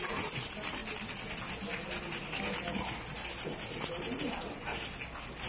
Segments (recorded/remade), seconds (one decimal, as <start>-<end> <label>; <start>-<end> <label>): 0.0-5.5 recorded